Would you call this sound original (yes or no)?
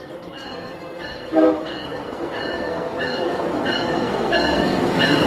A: no